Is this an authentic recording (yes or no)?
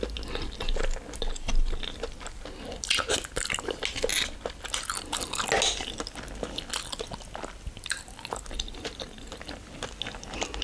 yes